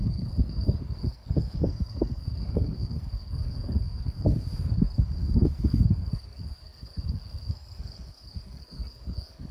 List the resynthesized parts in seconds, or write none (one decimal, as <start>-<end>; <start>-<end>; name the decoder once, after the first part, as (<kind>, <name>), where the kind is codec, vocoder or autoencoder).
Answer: 0.0-9.5 (codec, SNAC)